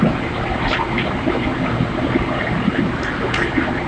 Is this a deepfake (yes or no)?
no